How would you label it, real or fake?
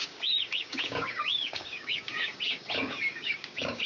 fake